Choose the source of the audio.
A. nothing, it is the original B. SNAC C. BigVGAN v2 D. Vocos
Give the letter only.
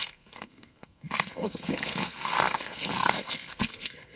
B